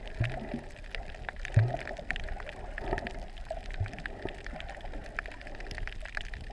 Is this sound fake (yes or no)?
no